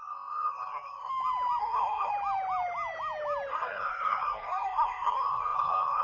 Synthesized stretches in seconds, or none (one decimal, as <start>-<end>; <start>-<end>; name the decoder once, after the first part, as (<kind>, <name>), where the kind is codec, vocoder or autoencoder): 0.0-1.1 (codec, SNAC); 1.6-2.1; 3.5-6.0